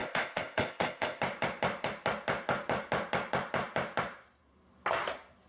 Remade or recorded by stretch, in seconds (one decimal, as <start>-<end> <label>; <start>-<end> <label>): 0.0-1.2 remade; 1.2-5.5 recorded